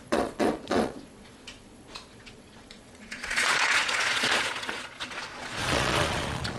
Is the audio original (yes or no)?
no